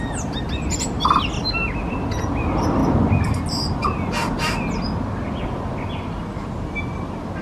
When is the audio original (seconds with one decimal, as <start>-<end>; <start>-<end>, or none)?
0.0-7.4